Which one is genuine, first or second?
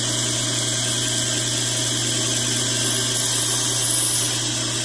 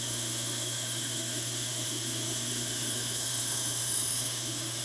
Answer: first